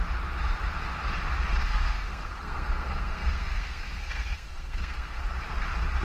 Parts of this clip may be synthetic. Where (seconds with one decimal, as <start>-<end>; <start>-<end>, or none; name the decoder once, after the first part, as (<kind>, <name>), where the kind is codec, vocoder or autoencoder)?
1.6-5.2 (codec, SNAC)